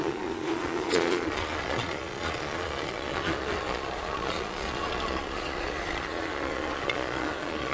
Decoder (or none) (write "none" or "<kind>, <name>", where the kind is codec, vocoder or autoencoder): vocoder, Vocos